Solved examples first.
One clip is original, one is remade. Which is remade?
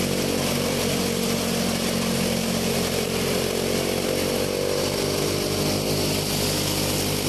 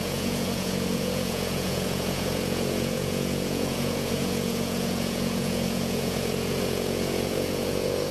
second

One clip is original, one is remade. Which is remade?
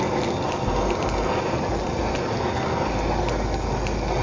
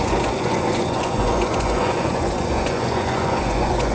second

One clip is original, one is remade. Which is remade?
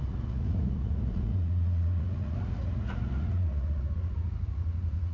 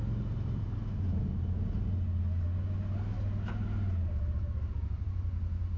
first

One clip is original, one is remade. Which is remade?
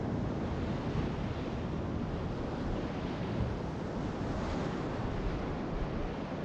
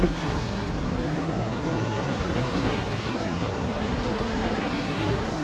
second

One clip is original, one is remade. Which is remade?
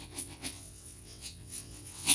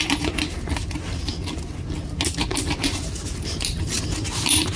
first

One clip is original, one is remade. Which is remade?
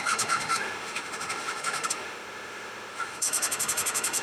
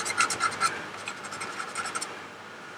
first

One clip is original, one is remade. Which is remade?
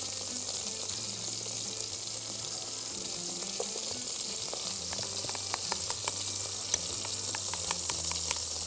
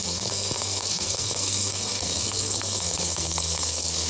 second